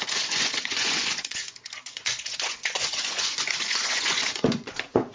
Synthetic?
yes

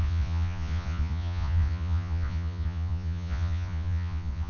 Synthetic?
yes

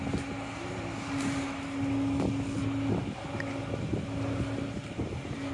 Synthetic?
no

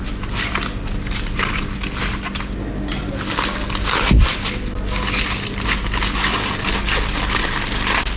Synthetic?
no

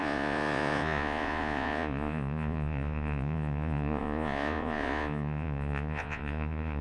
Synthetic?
yes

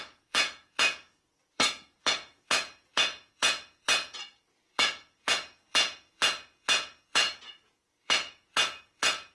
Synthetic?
yes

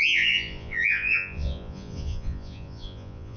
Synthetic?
yes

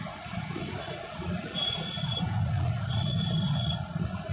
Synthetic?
yes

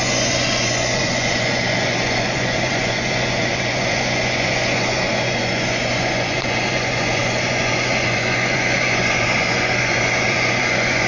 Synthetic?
yes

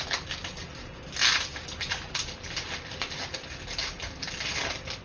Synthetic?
no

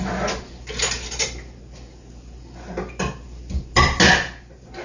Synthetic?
no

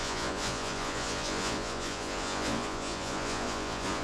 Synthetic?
yes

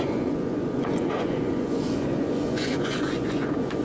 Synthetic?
yes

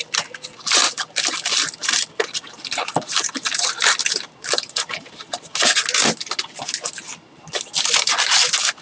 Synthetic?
no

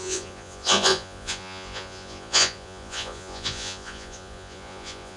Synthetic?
yes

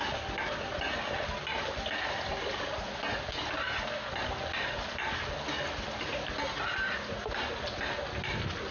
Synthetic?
no